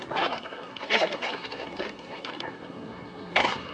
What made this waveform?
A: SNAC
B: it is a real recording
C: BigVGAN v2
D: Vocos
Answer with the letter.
A